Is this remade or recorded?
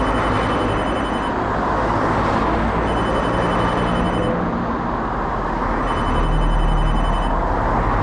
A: recorded